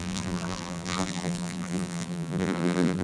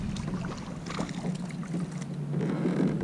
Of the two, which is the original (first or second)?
second